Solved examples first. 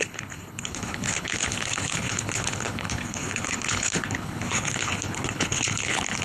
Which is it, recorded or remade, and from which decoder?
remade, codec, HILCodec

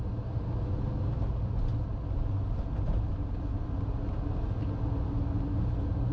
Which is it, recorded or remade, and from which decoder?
recorded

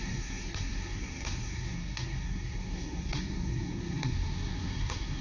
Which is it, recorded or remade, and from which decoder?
remade, codec, SNAC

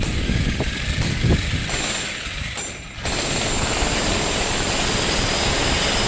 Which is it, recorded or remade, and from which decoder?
recorded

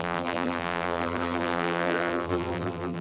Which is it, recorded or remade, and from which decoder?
remade, vocoder, BigVGAN v2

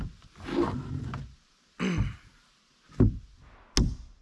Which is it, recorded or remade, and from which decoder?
recorded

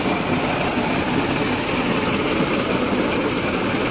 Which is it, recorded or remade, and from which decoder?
recorded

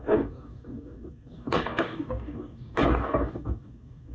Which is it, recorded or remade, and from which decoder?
remade, codec, DAC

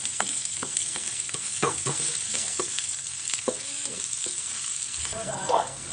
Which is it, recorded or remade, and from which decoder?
remade, codec, SNAC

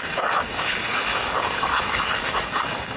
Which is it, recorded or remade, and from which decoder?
remade, codec, DAC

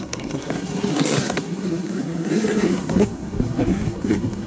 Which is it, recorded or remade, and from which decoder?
remade, codec, SNAC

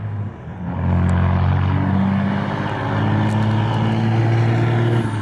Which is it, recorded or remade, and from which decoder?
recorded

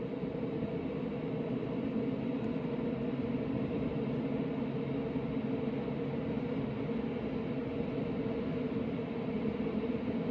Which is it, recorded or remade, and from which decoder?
recorded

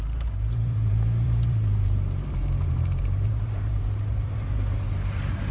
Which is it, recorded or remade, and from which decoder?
remade, vocoder, BigVGAN v2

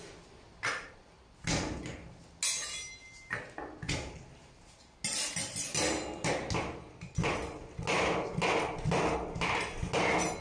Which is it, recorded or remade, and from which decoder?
recorded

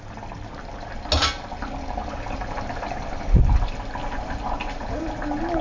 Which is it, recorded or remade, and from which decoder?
recorded